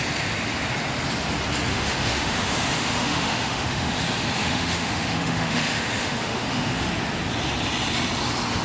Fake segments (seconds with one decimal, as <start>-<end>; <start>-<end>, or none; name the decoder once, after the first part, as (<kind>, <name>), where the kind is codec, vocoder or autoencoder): 1.7-4.0 (autoencoder, DAC-VAE); 4.4-6.9